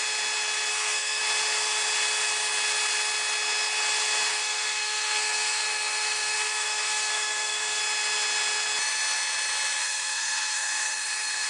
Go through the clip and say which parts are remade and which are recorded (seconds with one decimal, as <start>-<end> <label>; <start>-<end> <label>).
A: 0.0-0.7 recorded; 0.7-1.2 remade; 1.2-4.3 recorded; 4.3-7.8 remade; 7.8-9.8 recorded; 9.8-11.5 remade